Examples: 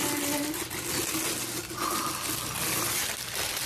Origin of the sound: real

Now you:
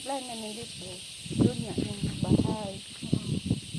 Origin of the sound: real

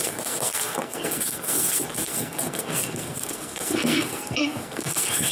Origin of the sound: fake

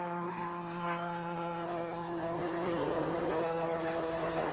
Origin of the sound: fake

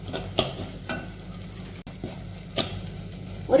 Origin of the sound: real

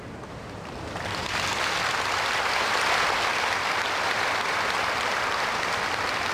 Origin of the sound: real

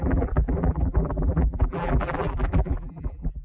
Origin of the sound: fake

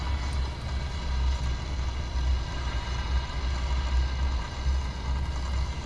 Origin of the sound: real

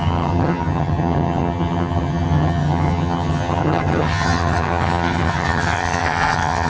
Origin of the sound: fake